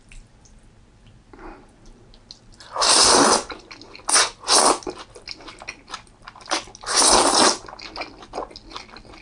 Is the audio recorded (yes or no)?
yes